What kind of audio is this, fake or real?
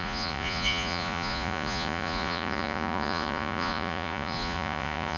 fake